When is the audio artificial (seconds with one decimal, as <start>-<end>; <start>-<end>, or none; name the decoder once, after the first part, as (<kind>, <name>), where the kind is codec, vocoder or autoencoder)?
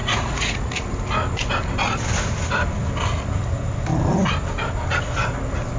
0.0-0.7 (vocoder, Vocos)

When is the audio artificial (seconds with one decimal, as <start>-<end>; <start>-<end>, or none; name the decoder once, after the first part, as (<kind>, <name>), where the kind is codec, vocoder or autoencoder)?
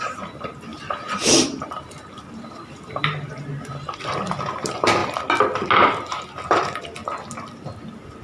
0.7-4.4 (vocoder, BigVGAN v2)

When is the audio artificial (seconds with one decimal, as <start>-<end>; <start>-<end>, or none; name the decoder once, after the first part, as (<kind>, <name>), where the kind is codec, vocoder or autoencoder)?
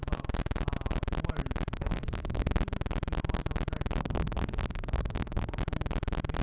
1.7-2.5 (codec, SNAC); 4.0-5.6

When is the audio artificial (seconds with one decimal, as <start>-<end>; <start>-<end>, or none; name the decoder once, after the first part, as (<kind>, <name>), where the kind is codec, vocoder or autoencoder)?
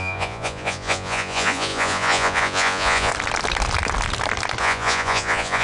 0.0-3.1 (vocoder, Vocos); 4.6-5.6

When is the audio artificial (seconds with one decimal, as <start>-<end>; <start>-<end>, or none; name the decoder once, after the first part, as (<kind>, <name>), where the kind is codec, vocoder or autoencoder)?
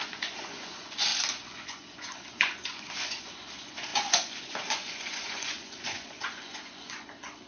0.0-7.5 (vocoder, Vocos)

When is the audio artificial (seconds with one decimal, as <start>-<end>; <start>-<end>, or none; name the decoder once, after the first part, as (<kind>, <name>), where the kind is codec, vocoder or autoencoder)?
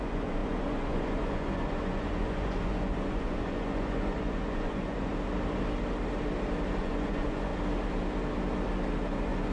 0.0-5.1 (vocoder, Vocos); 6.8-7.5; 9.1-9.5